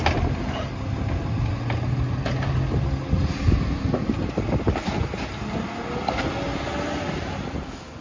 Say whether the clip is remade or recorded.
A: recorded